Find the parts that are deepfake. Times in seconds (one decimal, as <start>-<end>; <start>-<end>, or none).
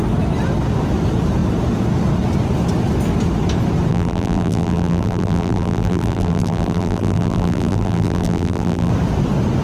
3.9-8.9